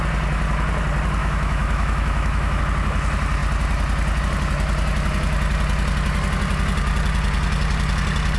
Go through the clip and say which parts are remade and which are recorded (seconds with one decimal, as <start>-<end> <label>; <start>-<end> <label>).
0.0-1.2 recorded; 1.2-2.6 remade; 2.6-8.4 recorded